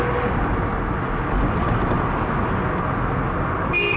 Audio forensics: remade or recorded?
recorded